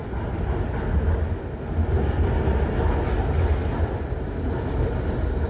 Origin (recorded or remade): recorded